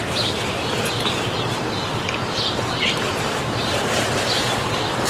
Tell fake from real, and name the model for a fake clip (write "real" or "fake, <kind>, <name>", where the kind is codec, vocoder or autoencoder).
fake, vocoder, BigVGAN v2